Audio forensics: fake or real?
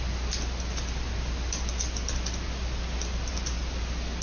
real